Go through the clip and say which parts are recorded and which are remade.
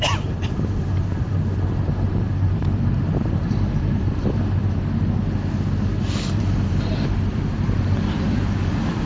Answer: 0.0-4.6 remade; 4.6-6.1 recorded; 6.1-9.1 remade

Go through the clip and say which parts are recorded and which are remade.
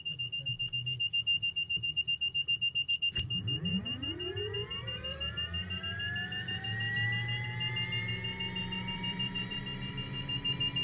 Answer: 0.0-1.3 recorded; 1.3-2.0 remade; 2.0-3.7 recorded; 3.7-5.8 remade; 5.8-8.6 recorded; 8.6-9.6 remade; 9.6-10.8 recorded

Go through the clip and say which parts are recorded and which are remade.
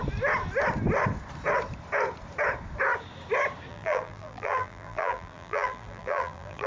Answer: 0.0-3.7 recorded; 3.7-6.7 remade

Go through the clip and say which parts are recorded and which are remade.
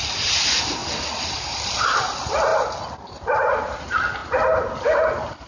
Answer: 0.0-5.5 recorded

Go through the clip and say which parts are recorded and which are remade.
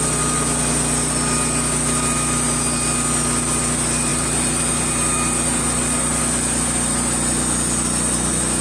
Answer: 0.0-4.1 recorded; 4.1-6.2 remade; 6.2-8.6 recorded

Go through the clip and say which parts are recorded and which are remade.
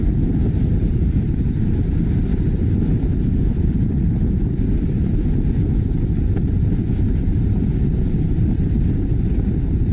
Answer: 0.0-0.9 recorded; 0.9-2.3 remade; 2.3-3.9 recorded; 3.9-9.9 remade